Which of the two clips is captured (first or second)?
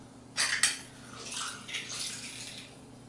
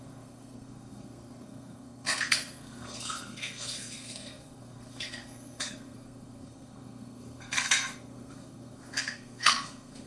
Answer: first